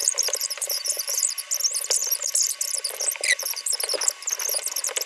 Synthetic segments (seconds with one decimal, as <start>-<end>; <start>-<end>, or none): 0.0-1.2